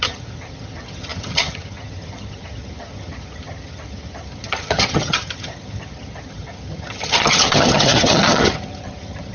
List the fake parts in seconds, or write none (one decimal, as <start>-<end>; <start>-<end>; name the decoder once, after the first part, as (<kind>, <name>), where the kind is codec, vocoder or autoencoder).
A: 0.0-9.3 (vocoder, HiFi-GAN)